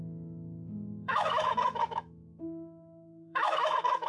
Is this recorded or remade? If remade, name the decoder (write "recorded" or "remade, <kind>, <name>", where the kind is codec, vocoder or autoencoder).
remade, autoencoder, DAC-VAE